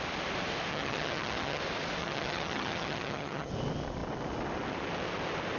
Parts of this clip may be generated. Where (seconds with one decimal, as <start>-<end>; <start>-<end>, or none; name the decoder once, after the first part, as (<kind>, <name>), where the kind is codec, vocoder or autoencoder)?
0.7-1.6 (vocoder, HiFi-GAN); 2.0-3.5